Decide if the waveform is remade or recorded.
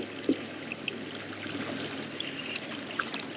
recorded